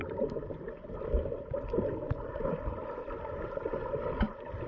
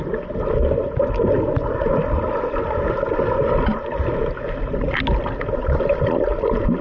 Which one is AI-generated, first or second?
first